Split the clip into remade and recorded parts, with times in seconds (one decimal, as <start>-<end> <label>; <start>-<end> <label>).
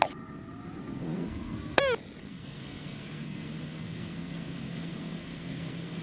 0.0-0.8 recorded; 0.8-1.8 remade; 1.8-2.2 recorded; 2.2-6.0 remade